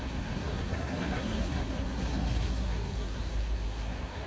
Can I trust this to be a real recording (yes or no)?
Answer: no